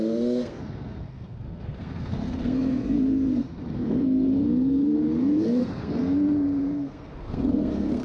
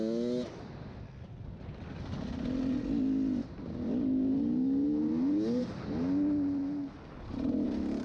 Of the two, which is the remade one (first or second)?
first